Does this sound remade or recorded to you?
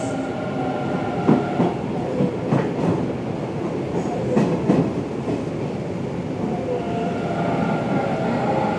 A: recorded